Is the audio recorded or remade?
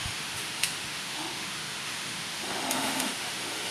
remade